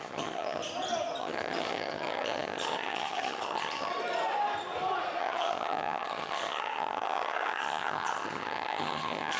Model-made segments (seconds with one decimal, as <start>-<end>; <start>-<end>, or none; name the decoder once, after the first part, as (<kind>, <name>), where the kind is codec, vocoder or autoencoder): 0.0-0.6 (vocoder, HiFi-GAN); 1.2-3.9; 5.2-9.4